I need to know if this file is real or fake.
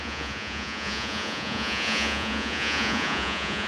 fake